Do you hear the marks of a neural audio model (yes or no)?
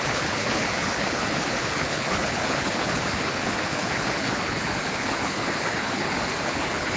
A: yes